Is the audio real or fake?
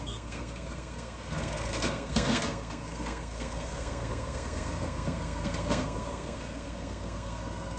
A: fake